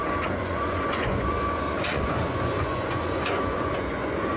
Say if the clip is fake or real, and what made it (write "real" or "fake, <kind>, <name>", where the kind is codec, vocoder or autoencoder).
fake, vocoder, Vocos